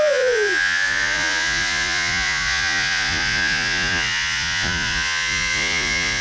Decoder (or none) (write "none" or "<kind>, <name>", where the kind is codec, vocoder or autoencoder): vocoder, Vocos